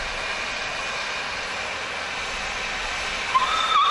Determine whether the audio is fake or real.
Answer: real